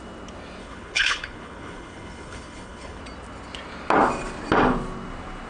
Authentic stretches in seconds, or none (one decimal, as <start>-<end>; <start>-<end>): 0.0-0.6; 3.0-5.5

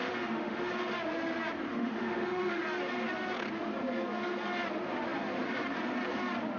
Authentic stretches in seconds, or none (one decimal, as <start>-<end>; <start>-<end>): 0.7-1.7; 2.6-6.6

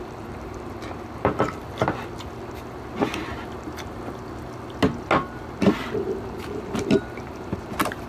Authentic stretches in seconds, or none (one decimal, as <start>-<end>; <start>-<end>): 1.6-6.4

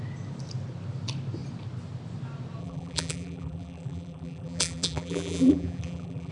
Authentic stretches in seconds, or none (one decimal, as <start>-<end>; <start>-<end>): 0.0-2.6